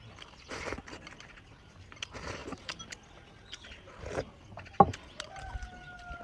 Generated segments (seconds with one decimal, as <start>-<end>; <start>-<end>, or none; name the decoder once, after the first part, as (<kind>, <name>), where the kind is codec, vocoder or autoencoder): none